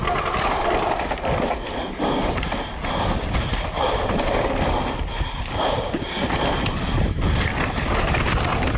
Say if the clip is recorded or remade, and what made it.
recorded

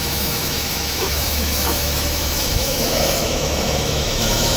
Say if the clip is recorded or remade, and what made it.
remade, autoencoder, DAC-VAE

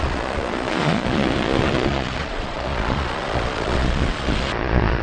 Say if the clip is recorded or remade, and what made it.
remade, vocoder, Vocos